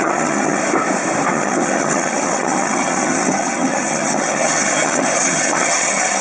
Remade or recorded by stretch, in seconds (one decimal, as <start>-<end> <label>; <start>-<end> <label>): 0.0-0.6 remade; 0.6-1.3 recorded; 1.3-6.2 remade